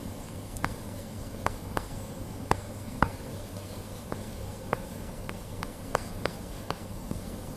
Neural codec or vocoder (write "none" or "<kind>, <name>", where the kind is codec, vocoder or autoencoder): codec, SNAC